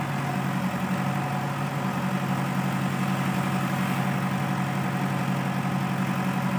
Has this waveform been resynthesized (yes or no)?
no